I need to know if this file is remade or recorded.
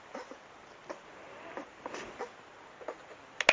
recorded